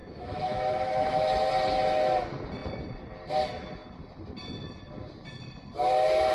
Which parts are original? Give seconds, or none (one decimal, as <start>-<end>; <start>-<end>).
1.5-6.3